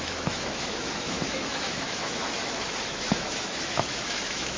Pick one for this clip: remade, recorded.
remade